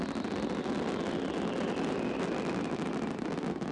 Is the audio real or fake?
fake